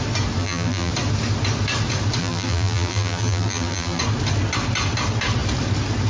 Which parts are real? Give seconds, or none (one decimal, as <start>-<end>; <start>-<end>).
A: 0.0-0.4; 0.9-2.2; 4.0-6.1